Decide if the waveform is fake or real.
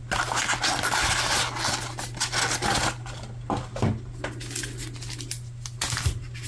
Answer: real